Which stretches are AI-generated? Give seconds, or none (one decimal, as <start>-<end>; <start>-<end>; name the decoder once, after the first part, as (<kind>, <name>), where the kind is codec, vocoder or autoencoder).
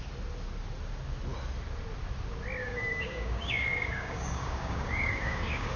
2.6-5.8 (codec, DAC)